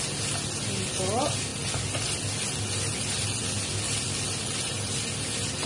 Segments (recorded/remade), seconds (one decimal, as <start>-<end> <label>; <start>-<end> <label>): 0.0-5.7 recorded